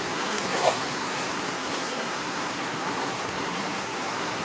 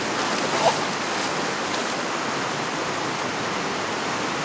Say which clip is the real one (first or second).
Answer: second